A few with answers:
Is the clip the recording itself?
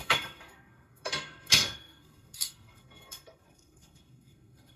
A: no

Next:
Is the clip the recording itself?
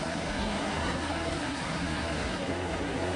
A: no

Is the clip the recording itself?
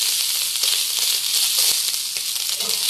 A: yes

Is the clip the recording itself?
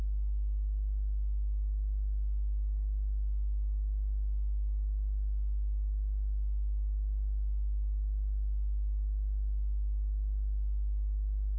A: yes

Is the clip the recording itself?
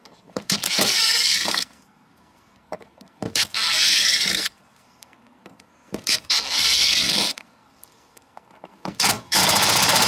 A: no